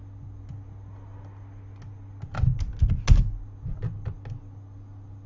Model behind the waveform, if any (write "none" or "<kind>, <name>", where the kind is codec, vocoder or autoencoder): none